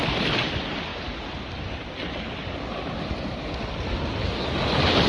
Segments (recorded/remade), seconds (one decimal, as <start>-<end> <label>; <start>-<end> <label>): 0.0-5.1 recorded